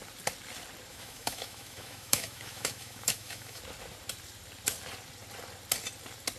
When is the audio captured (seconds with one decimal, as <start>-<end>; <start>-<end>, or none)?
0.0-0.9; 3.6-6.4